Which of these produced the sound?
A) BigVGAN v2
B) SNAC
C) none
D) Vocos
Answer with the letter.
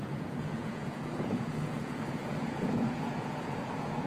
D